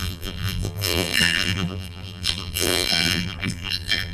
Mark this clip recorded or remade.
remade